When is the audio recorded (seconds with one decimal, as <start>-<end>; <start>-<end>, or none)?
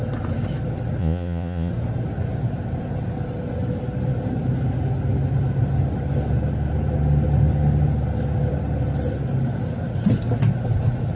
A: 0.0-1.0; 1.7-11.2